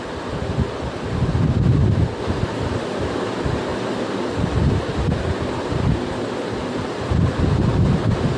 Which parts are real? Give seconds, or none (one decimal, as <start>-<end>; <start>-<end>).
none